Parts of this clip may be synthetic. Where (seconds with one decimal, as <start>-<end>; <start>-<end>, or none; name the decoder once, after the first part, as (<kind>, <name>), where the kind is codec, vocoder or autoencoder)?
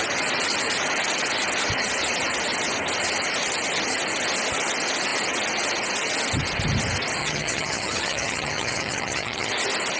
7.2-9.5 (vocoder, HiFi-GAN)